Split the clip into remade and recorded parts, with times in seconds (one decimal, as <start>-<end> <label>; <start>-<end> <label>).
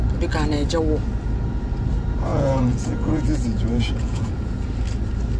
0.0-2.3 recorded; 2.3-4.7 remade; 4.7-5.4 recorded